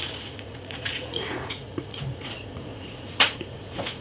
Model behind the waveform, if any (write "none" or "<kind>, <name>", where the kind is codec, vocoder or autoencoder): vocoder, Vocos